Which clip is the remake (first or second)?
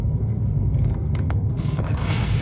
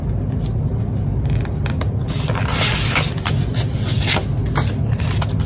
first